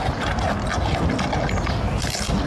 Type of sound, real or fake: real